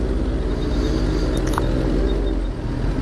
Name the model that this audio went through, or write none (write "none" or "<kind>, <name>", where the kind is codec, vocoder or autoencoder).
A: none